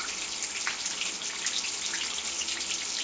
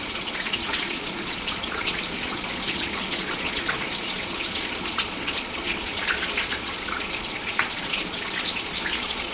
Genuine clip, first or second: first